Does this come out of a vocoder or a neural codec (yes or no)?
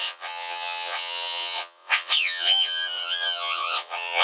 yes